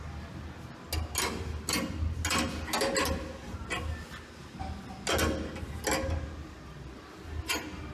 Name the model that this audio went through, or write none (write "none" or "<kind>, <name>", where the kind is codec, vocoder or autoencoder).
none